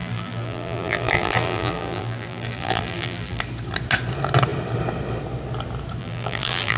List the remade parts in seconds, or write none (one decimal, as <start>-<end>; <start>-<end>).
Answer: 0.0-3.4; 6.0-6.8

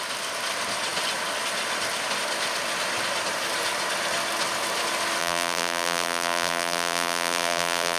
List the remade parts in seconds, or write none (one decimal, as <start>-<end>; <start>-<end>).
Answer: 5.2-8.0

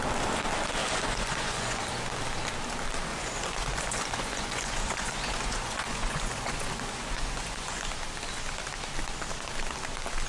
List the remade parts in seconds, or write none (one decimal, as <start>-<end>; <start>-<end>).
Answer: 0.8-1.8; 3.1-7.9

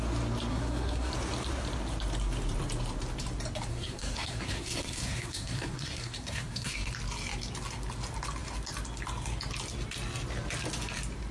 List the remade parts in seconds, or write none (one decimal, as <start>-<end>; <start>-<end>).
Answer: 0.5-1.1; 3.7-6.9

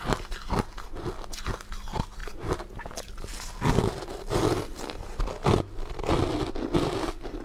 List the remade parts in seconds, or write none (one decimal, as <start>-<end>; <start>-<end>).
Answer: none

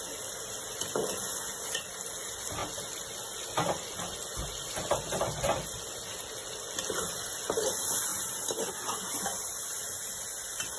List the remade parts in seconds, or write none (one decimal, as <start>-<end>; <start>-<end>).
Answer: none

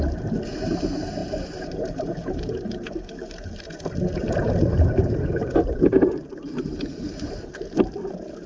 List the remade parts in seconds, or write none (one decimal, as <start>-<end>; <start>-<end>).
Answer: 1.2-3.6; 4.2-7.9